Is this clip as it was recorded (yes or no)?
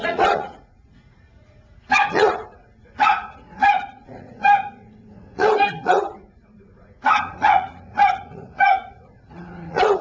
no